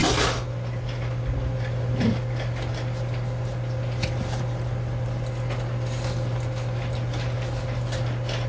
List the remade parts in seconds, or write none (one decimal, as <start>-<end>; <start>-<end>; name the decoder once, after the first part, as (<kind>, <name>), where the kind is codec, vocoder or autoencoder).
none

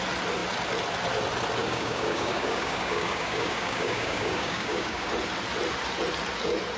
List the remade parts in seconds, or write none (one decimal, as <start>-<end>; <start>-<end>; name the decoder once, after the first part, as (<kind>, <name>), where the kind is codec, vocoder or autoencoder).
1.6-5.1 (codec, DAC)

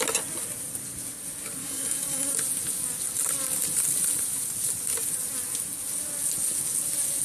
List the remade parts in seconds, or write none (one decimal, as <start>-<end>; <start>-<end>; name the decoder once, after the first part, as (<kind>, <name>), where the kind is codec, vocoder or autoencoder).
1.6-2.3 (codec, DAC)

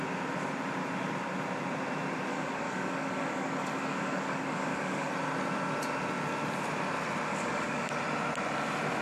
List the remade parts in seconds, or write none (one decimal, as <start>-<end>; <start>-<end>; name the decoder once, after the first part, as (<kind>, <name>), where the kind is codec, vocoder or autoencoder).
2.3-5.1 (codec, DAC); 7.3-7.9